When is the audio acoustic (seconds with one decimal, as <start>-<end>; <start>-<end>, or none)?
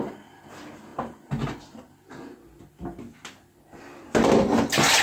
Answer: 0.0-0.9; 2.2-5.0